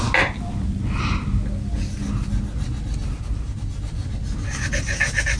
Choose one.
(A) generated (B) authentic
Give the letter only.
B